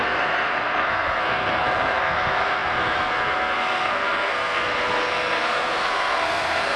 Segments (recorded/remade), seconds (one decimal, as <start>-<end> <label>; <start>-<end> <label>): 0.0-6.8 remade